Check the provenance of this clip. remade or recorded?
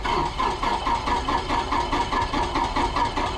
recorded